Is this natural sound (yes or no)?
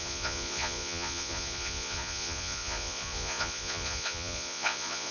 no